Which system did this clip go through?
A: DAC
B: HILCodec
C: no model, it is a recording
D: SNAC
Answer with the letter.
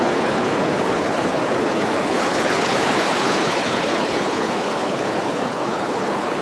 B